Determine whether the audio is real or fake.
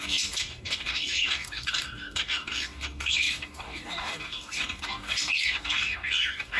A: fake